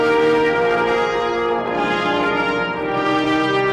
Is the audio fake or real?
fake